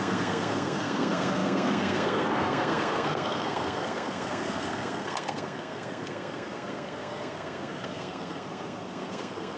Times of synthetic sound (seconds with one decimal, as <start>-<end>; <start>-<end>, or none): 0.0-9.6